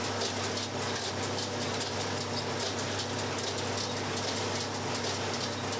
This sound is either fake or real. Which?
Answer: real